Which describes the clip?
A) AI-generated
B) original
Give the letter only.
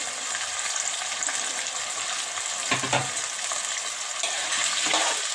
B